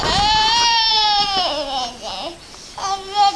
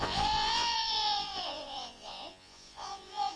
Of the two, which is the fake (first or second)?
second